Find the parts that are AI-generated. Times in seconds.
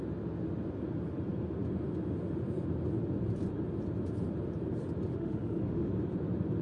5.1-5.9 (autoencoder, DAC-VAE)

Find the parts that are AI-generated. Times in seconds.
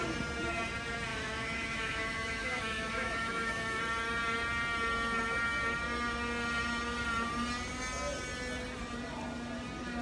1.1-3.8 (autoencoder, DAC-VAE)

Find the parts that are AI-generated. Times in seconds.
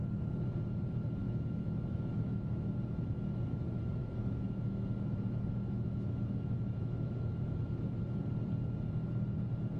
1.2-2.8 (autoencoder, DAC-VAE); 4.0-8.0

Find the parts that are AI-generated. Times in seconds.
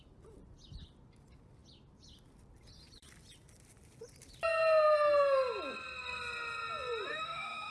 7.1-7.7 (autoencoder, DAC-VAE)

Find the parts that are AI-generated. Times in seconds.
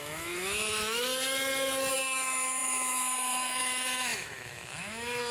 0.0-1.1 (autoencoder, DAC-VAE); 1.9-5.3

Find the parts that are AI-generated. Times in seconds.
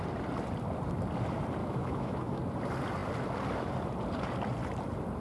1.6-2.4 (autoencoder, DAC-VAE)